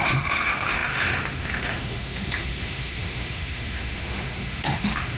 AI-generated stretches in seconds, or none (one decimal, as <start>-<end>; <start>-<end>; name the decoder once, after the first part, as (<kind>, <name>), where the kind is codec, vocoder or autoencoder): 0.0-5.2 (autoencoder, DAC-VAE)